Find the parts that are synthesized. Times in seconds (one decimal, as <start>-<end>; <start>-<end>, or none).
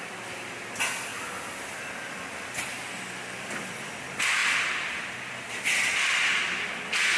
none